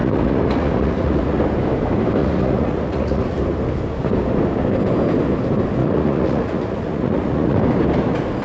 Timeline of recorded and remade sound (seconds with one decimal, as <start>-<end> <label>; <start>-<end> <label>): 0.0-1.4 remade; 1.4-2.2 recorded; 2.2-3.4 remade; 3.4-5.8 recorded; 5.8-7.6 remade; 7.6-8.4 recorded